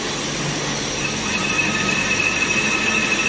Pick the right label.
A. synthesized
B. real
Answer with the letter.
B